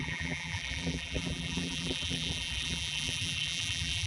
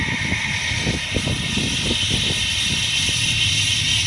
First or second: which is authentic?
second